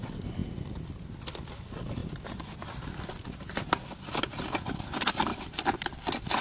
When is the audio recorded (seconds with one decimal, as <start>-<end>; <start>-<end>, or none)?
0.0-5.3